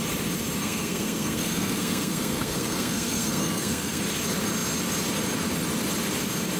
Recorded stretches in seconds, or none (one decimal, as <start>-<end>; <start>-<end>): 0.0-0.6; 4.0-6.6